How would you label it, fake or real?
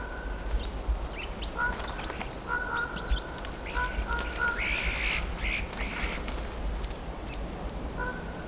real